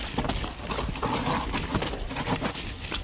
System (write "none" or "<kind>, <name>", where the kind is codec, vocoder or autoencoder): none